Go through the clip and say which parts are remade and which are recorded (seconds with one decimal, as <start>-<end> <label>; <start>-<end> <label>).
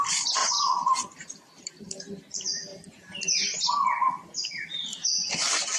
0.0-2.7 remade; 2.7-3.4 recorded; 3.4-4.9 remade; 4.9-5.8 recorded